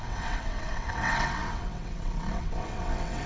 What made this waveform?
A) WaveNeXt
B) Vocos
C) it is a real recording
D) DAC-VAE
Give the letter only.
A